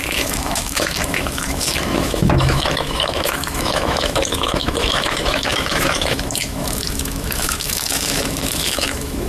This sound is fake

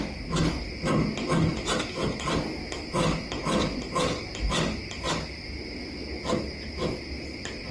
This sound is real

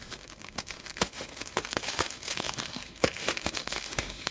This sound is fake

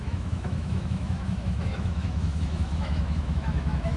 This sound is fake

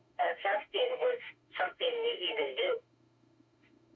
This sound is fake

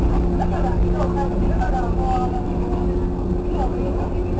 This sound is real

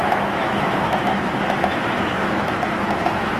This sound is fake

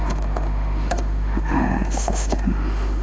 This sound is fake